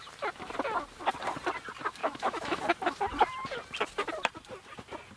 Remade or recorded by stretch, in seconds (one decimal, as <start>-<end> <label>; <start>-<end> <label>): 0.0-2.0 recorded; 2.0-2.6 remade; 2.6-5.2 recorded